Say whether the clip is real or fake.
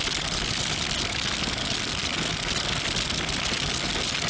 real